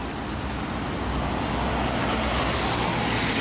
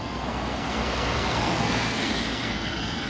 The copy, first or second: second